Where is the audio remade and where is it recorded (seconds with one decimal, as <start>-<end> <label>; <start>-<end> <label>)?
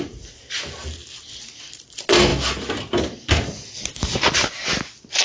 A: 0.0-5.2 recorded